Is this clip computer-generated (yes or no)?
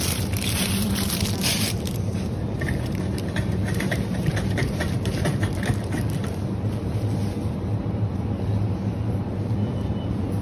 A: yes